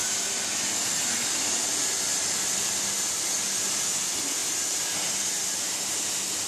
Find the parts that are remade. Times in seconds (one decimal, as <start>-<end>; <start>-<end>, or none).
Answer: none